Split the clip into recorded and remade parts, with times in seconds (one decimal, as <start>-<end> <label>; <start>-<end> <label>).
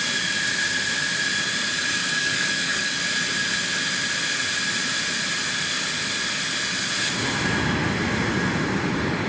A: 0.0-2.0 recorded; 2.0-3.0 remade; 3.0-9.3 recorded